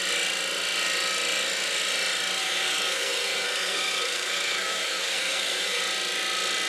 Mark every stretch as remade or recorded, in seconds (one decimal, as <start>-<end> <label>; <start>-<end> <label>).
0.0-2.4 recorded; 2.4-5.8 remade; 5.8-6.7 recorded